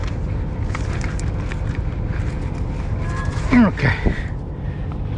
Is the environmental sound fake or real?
real